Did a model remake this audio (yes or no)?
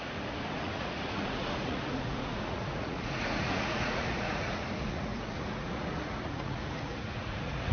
yes